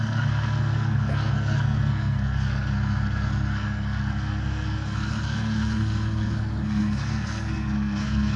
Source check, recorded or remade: remade